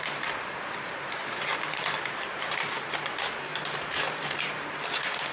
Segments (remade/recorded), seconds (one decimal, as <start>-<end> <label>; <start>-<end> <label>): 0.0-5.3 remade